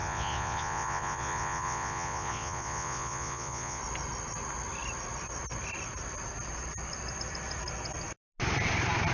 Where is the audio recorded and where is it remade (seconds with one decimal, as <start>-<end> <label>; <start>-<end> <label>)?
0.0-3.8 remade; 3.8-9.1 recorded